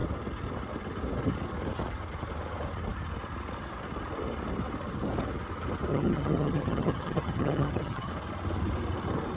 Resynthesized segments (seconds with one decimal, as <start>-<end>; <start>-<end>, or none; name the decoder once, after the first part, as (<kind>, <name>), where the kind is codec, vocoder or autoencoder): 5.9-8.1 (vocoder, HiFi-GAN)